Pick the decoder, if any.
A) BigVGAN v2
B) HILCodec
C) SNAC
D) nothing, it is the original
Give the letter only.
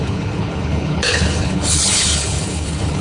B